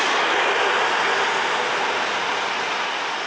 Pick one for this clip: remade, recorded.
recorded